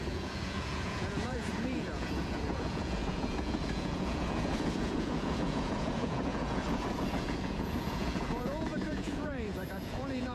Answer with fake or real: fake